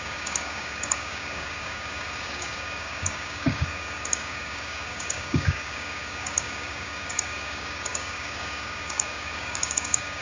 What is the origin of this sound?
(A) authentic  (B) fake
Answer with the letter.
B